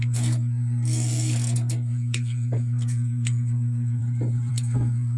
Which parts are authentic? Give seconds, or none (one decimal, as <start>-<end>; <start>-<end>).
4.0-4.5